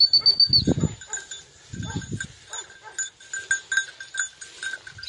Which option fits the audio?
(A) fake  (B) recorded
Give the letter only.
B